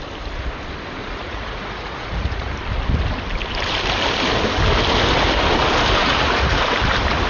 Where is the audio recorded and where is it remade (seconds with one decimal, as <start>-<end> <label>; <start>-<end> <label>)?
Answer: 0.0-1.0 recorded; 1.0-2.5 remade; 2.5-6.0 recorded; 6.0-6.6 remade; 6.6-7.3 recorded